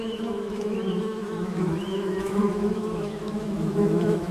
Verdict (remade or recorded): remade